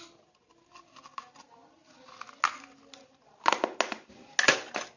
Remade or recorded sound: recorded